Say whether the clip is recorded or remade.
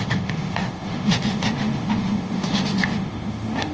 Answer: remade